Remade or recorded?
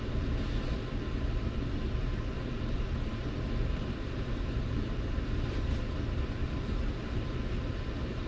remade